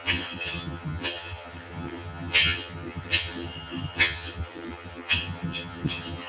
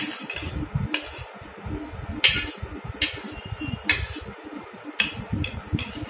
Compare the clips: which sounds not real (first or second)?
first